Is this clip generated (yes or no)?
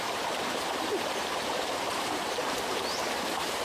yes